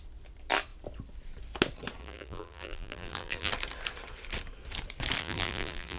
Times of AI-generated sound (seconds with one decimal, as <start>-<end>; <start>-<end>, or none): 2.0-3.5; 5.2-6.0